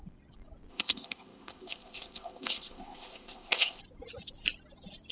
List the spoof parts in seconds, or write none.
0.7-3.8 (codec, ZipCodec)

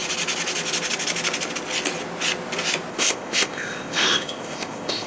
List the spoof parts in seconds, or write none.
2.9-5.1 (codec, ZipCodec)

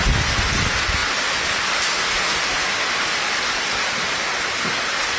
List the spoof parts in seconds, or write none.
none

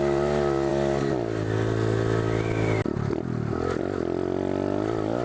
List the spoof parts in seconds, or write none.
none